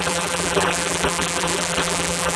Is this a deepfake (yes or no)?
yes